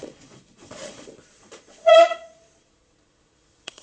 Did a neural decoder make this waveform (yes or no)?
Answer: yes